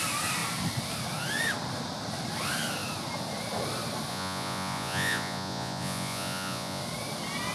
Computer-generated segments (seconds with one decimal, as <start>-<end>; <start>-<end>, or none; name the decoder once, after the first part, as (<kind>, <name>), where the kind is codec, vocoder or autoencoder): 4.1-6.8 (vocoder, Vocos)